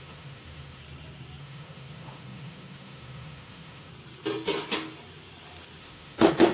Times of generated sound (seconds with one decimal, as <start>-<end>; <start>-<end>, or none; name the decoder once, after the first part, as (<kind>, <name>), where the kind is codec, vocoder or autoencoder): 0.0-0.8 (autoencoder, DAC-VAE); 1.4-3.9; 5.8-6.5